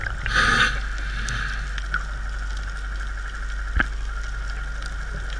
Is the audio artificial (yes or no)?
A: no